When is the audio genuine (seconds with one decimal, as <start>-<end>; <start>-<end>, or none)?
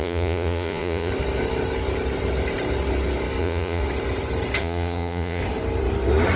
1.1-3.4; 3.8-4.6; 5.4-6.4